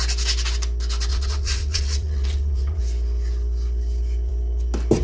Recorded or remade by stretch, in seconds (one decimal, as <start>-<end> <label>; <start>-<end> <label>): 0.0-1.1 recorded; 1.1-2.8 remade; 2.8-5.0 recorded